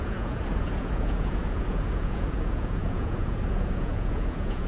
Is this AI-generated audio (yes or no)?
yes